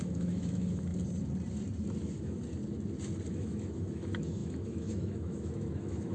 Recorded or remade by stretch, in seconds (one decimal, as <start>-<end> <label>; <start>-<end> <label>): 0.0-0.9 remade; 0.9-3.3 recorded; 3.3-6.1 remade